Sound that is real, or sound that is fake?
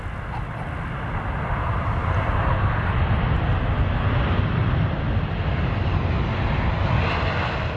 real